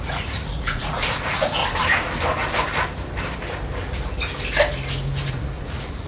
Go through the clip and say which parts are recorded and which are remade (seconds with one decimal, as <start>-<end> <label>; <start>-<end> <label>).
0.0-1.6 remade; 1.6-5.3 recorded; 5.3-6.1 remade